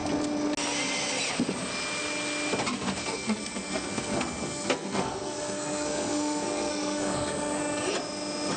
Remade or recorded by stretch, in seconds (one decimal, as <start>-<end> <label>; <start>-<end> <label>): 0.0-3.0 recorded; 3.0-7.6 remade; 7.6-8.6 recorded